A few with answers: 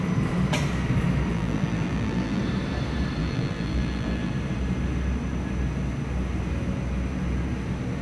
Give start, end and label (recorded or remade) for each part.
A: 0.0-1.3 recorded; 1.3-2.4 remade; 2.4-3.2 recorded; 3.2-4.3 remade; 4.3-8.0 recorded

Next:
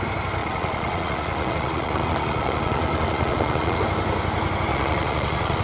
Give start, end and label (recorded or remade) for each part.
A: 0.0-0.4 recorded; 0.4-3.8 remade; 3.8-4.7 recorded; 4.7-5.6 remade

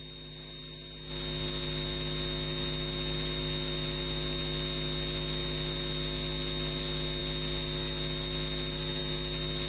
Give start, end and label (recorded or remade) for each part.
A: 0.0-9.7 recorded

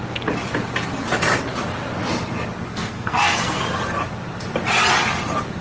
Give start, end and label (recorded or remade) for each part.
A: 0.0-2.7 recorded; 2.7-3.6 remade; 3.6-5.6 recorded

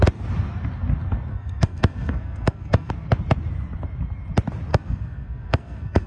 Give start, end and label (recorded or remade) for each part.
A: 0.0-1.3 recorded; 1.3-2.9 remade; 2.9-4.7 recorded; 4.7-6.1 remade

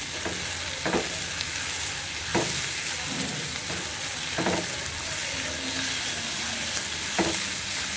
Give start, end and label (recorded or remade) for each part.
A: 0.0-8.0 recorded

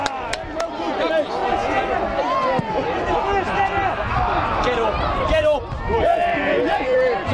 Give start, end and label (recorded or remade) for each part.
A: 0.0-6.1 recorded; 6.1-7.3 remade